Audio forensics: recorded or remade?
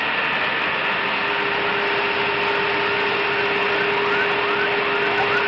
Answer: recorded